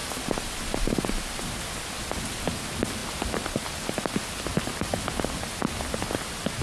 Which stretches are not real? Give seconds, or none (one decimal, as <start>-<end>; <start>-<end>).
none